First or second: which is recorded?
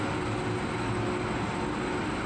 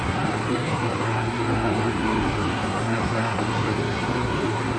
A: first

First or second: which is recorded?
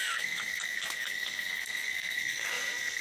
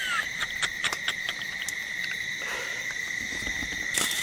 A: second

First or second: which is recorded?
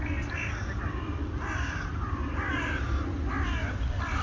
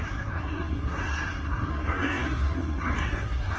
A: first